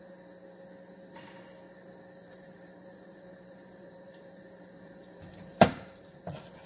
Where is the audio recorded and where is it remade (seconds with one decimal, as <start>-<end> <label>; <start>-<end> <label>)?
0.0-2.2 recorded; 2.2-6.2 remade; 6.2-6.7 recorded